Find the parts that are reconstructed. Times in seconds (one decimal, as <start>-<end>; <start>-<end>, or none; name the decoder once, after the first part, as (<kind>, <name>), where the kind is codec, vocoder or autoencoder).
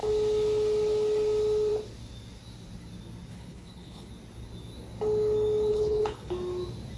3.3-4.1 (codec, HILCodec); 5.7-6.3